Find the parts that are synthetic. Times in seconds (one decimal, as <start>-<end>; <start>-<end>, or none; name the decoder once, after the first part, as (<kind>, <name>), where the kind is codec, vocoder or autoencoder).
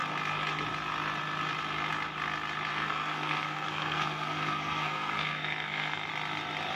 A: 2.7-6.1 (codec, SNAC)